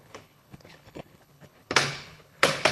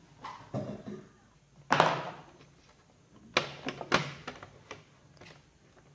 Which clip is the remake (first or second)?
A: first